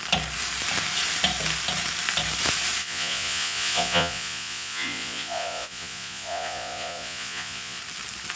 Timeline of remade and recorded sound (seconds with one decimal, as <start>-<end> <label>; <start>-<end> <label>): 0.0-2.8 recorded; 2.8-7.8 remade; 7.8-8.4 recorded